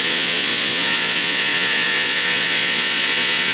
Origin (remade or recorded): remade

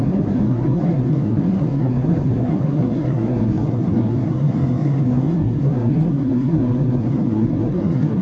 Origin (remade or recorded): remade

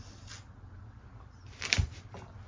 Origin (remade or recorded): recorded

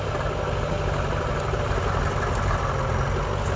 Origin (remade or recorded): recorded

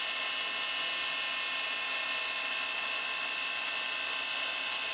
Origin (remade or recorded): recorded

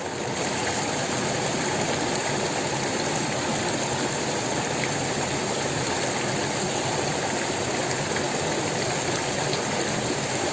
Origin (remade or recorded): recorded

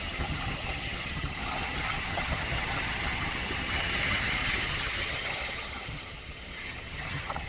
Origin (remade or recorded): remade